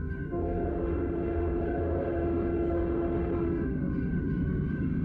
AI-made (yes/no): yes